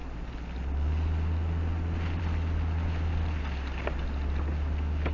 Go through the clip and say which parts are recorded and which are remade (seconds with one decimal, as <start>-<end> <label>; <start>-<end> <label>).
0.0-5.1 recorded

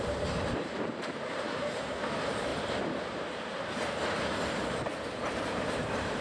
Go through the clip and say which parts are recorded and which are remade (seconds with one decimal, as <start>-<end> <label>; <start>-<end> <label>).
0.0-2.5 remade; 2.5-5.3 recorded; 5.3-6.2 remade

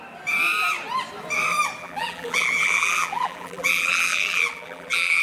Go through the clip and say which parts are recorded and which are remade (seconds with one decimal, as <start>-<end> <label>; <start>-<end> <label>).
0.0-1.8 recorded; 1.8-5.2 remade

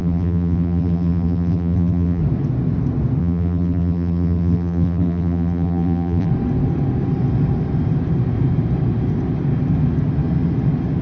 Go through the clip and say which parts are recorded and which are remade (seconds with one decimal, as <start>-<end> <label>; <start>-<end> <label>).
0.0-2.2 remade; 2.2-3.2 recorded; 3.2-6.3 remade; 6.3-11.0 recorded